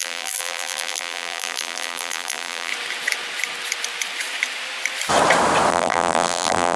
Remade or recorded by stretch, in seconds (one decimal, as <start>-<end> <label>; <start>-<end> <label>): 0.0-2.7 remade; 2.7-5.7 recorded; 5.7-6.8 remade